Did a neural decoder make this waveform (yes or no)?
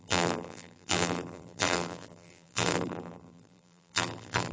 yes